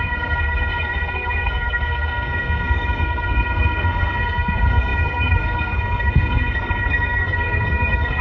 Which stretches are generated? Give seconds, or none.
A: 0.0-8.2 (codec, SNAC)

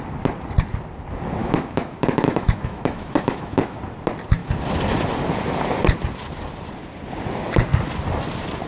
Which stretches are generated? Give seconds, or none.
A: 1.4-3.8 (autoencoder, DAC-VAE)

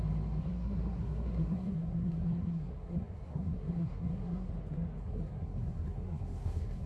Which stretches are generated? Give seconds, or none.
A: 0.4-4.5 (codec, SNAC); 5.0-6.9

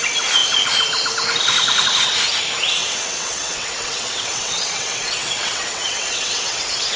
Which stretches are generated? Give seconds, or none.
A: 2.8-6.6 (vocoder, WaveNeXt)

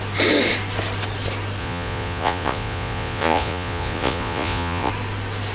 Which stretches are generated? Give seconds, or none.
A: 1.6-4.9 (vocoder, Vocos)

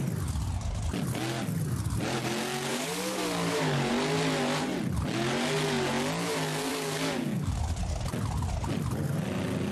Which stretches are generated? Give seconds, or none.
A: 2.7-3.9 (codec, DAC); 6.7-7.7

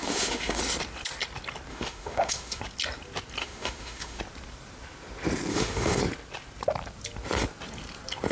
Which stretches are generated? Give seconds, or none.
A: 0.0-0.6 (autoencoder, DAC-VAE); 1.7-2.6; 3.4-4.2; 5.5-6.0